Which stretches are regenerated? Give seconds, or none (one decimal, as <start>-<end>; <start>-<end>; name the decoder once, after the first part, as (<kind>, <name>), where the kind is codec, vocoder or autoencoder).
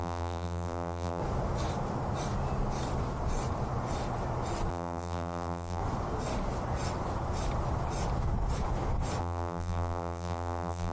0.0-1.2 (vocoder, BigVGAN v2); 4.7-5.8; 9.2-10.9